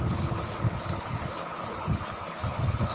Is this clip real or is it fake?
fake